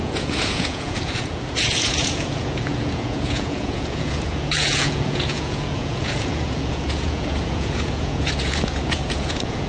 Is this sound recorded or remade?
remade